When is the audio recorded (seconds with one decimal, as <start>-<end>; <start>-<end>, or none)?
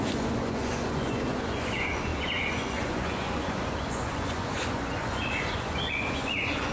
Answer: none